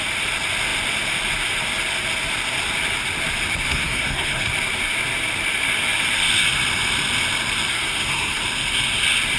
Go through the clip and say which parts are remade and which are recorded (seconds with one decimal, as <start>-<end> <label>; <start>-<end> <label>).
0.0-3.7 recorded; 3.7-4.5 remade; 4.5-7.7 recorded; 7.7-8.4 remade; 8.4-9.4 recorded